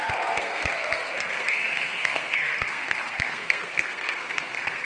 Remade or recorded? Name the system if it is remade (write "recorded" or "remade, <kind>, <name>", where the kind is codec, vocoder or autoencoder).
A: remade, codec, SNAC